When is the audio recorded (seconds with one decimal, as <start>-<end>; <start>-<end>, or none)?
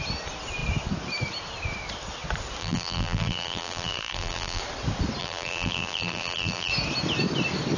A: 0.0-2.6; 4.6-5.2; 6.7-7.8